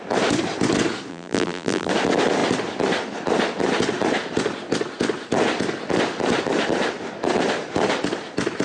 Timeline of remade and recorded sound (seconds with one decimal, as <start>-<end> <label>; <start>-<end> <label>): 0.0-1.1 recorded; 1.1-1.9 remade; 1.9-8.6 recorded